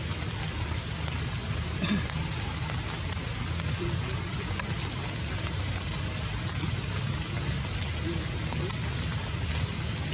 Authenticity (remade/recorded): recorded